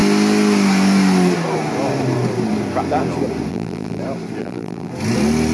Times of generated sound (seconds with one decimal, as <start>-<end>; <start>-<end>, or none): 3.5-4.0; 4.4-4.9